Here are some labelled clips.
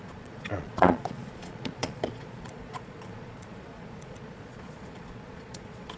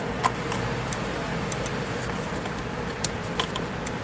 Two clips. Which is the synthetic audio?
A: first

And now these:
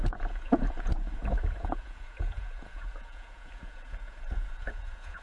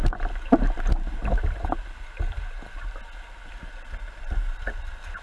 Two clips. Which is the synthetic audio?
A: first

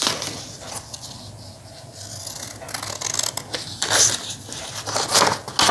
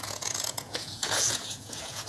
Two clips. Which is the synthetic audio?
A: second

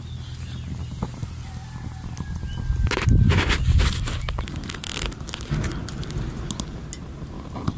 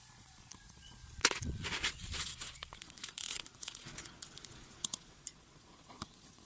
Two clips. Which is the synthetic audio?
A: second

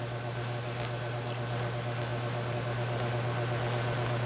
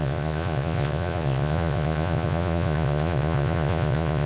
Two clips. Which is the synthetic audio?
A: second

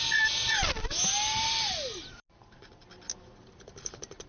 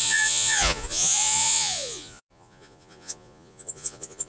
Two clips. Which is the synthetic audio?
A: second